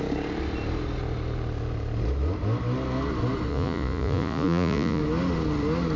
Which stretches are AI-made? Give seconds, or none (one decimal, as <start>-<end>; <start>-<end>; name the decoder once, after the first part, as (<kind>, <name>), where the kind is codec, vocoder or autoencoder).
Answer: 3.5-5.0 (vocoder, Vocos)

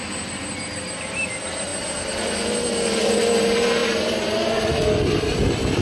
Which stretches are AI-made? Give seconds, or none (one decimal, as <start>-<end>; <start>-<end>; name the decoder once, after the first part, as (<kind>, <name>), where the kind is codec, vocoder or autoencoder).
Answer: none

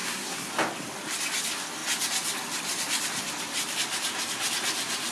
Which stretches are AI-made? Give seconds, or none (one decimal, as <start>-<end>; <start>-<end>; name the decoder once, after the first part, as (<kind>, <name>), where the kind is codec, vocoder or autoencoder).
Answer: 0.0-0.5 (codec, SNAC)

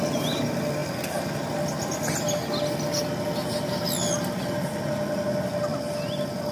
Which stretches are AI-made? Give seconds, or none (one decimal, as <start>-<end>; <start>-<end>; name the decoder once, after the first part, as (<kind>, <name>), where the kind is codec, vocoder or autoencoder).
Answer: none

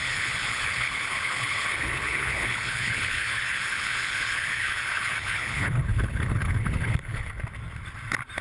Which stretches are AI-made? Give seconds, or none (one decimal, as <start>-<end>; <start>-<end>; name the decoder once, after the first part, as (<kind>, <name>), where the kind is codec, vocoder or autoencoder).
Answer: 0.0-7.3 (codec, HILCodec)

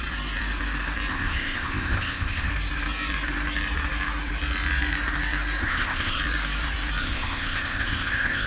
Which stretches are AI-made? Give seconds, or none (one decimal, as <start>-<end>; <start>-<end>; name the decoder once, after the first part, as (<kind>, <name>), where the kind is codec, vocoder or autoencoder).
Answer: 1.1-2.5 (codec, ZipCodec); 5.6-6.2; 7.0-8.5

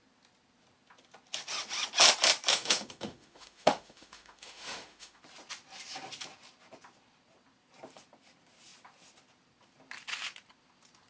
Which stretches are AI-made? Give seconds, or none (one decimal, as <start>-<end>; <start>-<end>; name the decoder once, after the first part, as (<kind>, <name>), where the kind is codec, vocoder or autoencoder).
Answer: 2.5-5.2 (autoencoder, DAC-VAE)